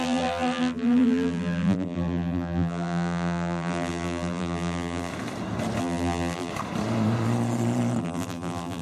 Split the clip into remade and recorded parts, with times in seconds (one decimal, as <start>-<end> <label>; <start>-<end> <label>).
0.0-5.1 remade; 5.1-5.8 recorded; 5.8-6.5 remade; 6.5-8.0 recorded; 8.0-8.8 remade